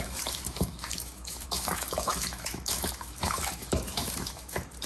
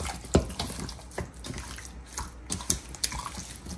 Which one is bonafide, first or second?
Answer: second